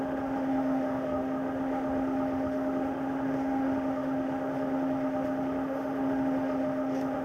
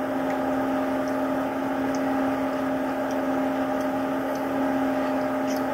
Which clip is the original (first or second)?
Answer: second